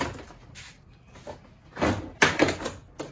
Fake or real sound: real